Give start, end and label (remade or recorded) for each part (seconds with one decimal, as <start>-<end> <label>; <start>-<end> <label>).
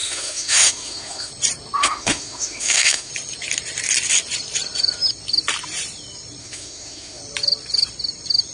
0.0-1.3 remade; 1.3-1.8 recorded; 1.8-3.1 remade; 3.1-6.4 recorded; 6.4-7.2 remade; 7.2-8.5 recorded